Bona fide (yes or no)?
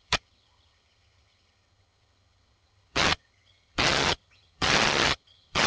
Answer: no